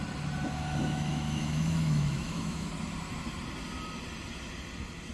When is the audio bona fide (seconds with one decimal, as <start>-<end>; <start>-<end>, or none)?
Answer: 0.0-0.8; 2.7-5.1